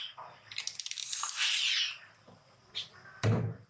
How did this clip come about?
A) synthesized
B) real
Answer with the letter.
B